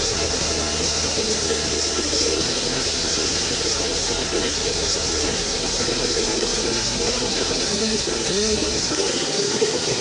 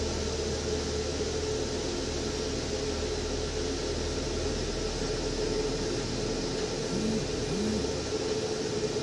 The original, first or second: second